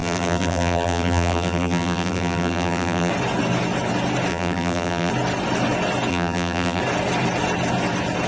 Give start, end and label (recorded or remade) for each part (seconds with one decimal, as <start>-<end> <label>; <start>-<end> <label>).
0.0-3.1 remade; 3.1-4.3 recorded; 4.3-5.1 remade; 5.1-6.1 recorded; 6.1-6.8 remade; 6.8-8.3 recorded